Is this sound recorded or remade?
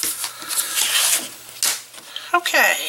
recorded